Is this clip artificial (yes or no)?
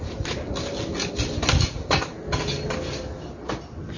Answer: no